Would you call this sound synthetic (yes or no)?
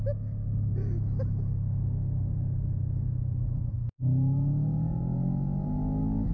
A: no